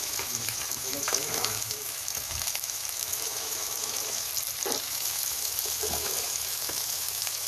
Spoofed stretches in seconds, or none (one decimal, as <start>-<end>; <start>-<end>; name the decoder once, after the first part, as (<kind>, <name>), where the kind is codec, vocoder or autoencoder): 0.0-4.3 (autoencoder, DAC-VAE); 4.8-7.5